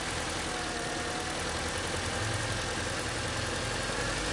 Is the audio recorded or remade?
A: recorded